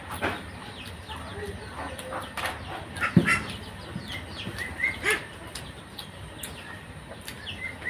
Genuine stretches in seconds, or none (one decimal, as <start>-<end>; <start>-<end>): 0.0-7.9

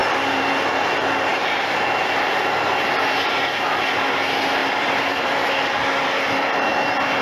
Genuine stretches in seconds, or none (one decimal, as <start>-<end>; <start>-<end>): 0.5-1.3; 2.9-4.6; 5.5-7.2

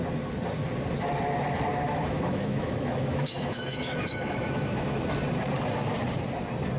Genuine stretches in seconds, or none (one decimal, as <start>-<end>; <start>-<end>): 0.0-1.7; 5.0-6.8

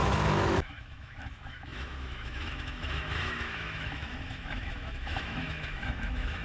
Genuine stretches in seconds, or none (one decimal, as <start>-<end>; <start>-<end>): none

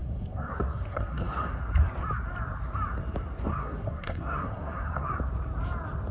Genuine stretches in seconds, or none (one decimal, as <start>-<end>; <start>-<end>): 1.6-3.5; 5.1-6.1

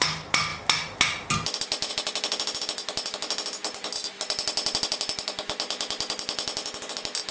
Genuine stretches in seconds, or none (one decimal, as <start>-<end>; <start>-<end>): 0.0-7.3

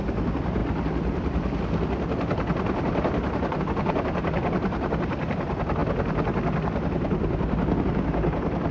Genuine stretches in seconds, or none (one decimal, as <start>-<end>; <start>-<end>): 5.8-7.8